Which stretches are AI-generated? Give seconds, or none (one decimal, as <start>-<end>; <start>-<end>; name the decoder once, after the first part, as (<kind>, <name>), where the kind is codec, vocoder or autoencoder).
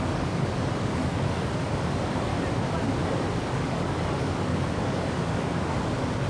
0.0-2.3 (codec, DAC); 3.4-6.3